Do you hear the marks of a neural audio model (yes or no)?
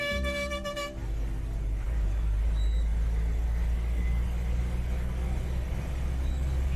yes